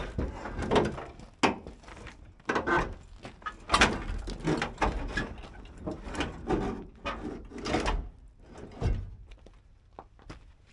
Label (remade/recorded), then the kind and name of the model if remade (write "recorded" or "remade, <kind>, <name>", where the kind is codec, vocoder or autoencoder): recorded